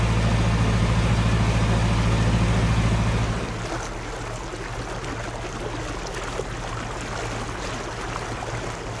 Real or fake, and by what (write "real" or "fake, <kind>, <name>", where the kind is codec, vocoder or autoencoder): real